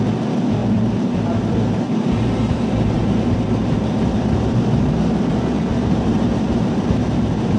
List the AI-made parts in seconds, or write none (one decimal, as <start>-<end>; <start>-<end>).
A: 0.6-4.9; 5.7-6.9